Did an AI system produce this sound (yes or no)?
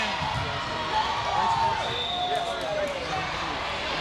no